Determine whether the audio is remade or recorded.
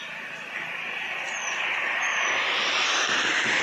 recorded